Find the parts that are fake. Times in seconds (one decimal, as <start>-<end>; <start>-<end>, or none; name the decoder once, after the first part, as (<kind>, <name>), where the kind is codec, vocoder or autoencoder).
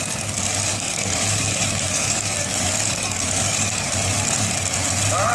0.7-3.9 (codec, DAC)